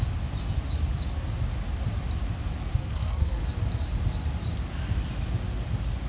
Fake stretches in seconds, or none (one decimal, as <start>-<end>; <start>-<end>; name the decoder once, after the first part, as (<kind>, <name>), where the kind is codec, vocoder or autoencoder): 2.8-3.4 (codec, SNAC)